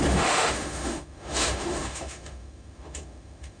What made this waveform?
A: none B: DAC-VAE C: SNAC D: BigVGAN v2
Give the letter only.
B